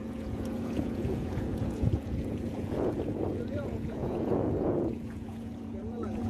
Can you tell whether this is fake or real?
fake